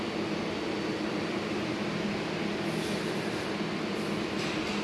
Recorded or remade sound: recorded